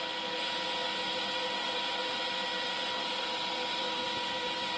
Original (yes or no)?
yes